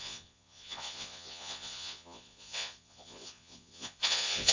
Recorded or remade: remade